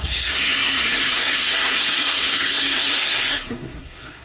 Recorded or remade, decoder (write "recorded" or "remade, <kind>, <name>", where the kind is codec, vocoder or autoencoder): remade, codec, SNAC